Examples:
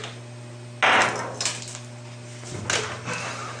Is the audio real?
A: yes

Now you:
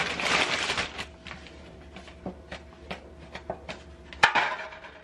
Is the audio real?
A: no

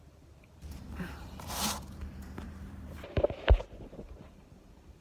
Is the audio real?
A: no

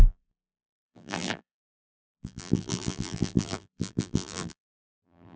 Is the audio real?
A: no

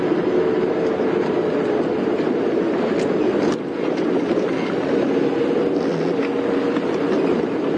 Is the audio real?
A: yes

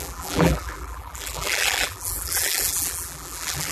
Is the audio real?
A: no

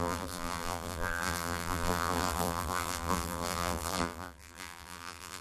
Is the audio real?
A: no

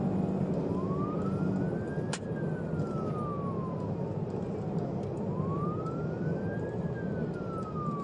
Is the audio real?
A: yes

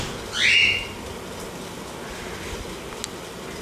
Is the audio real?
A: yes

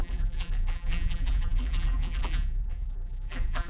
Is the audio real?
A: no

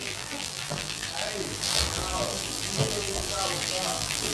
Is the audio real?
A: no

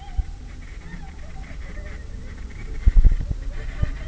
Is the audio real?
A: no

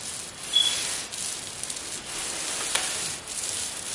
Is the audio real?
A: yes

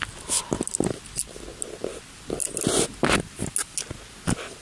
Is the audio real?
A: yes